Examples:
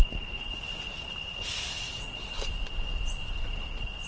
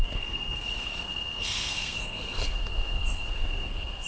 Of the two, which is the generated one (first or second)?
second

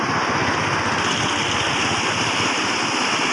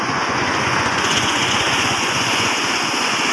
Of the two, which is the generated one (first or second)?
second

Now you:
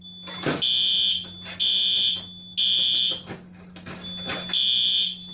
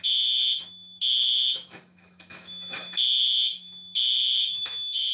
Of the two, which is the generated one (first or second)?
second